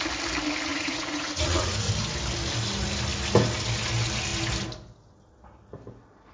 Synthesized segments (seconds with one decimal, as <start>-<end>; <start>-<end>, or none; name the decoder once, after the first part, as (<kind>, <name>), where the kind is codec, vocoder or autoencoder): 0.7-1.9 (vocoder, Vocos)